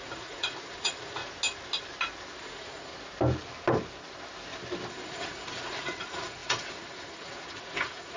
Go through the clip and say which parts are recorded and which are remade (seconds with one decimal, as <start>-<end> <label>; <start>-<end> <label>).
0.0-1.2 remade; 1.2-2.4 recorded; 2.4-2.9 remade; 2.9-4.9 recorded; 4.9-8.2 remade